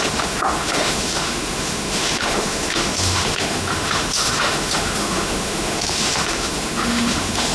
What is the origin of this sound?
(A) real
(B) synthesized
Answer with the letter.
B